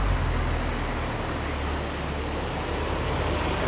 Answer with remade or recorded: recorded